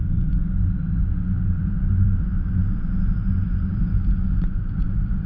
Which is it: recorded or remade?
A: remade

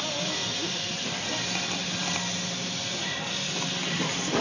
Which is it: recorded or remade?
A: recorded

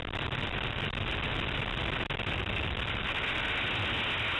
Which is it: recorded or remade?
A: recorded